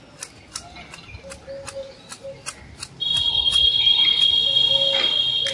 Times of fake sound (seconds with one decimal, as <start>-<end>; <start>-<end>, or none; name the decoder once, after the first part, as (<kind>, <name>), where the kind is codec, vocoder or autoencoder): 3.3-4.3 (codec, HILCodec)